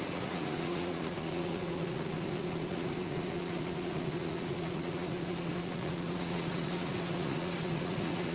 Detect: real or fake fake